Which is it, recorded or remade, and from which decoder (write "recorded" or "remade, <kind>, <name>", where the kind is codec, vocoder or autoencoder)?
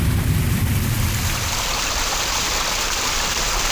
remade, vocoder, BigVGAN v2